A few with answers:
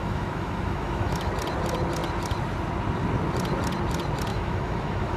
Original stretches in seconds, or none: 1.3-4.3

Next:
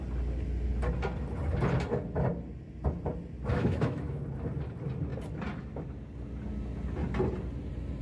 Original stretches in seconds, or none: 0.0-3.5; 4.2-8.0

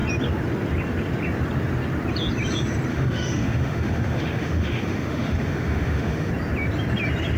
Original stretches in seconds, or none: 0.0-2.9; 6.3-7.4